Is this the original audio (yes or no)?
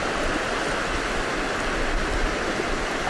yes